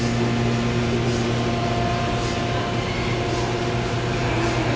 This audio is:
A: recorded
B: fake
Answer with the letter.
A